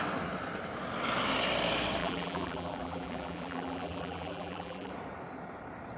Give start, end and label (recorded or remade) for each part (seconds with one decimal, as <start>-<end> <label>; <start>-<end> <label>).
0.0-2.0 recorded; 2.0-4.9 remade; 4.9-6.0 recorded